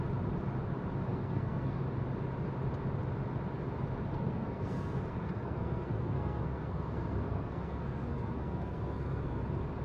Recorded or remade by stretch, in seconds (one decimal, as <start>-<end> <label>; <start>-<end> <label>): 0.0-1.1 recorded; 1.1-1.8 remade; 1.8-4.1 recorded; 4.1-9.4 remade; 9.4-9.8 recorded

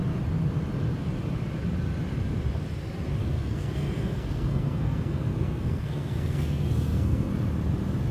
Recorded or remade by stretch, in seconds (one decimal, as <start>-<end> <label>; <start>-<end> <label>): 0.0-3.2 recorded; 3.2-7.3 remade; 7.3-8.1 recorded

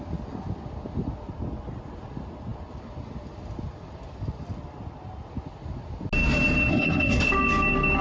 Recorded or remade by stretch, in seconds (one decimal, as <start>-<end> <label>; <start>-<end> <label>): 0.0-6.7 recorded; 6.7-7.2 remade; 7.2-8.0 recorded

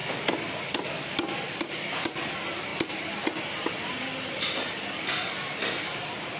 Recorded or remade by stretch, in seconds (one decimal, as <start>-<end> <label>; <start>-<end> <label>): 0.0-6.4 recorded

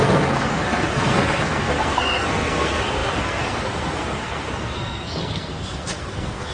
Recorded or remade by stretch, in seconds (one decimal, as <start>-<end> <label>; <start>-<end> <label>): 0.0-6.5 remade

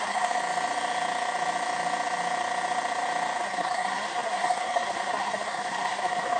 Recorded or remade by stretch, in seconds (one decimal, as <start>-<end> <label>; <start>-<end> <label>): 0.0-0.4 remade; 0.4-3.4 recorded; 3.4-6.4 remade